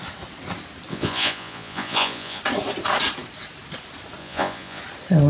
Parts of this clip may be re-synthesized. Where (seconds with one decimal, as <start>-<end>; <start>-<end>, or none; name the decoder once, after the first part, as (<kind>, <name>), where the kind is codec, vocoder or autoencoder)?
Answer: 0.9-2.4 (vocoder, Vocos); 4.2-4.8